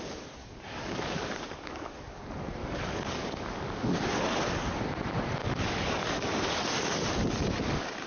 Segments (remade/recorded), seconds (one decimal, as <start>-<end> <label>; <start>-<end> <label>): 0.0-0.4 recorded; 0.4-2.2 remade; 2.2-2.6 recorded; 2.6-4.5 remade; 4.5-5.4 recorded; 5.4-6.5 remade; 6.5-8.1 recorded